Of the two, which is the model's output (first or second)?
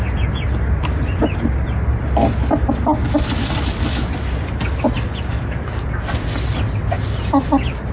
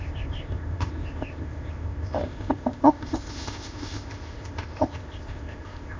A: second